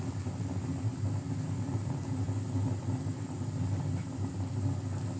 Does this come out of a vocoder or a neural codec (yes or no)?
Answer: no